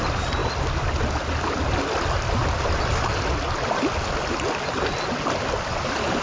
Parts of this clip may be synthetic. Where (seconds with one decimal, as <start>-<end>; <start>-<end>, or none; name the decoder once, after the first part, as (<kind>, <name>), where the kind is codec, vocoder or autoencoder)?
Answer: none